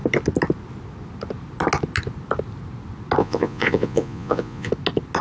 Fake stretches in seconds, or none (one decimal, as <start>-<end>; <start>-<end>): 3.2-4.7